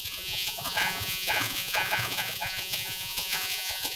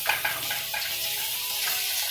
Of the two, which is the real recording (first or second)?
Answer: second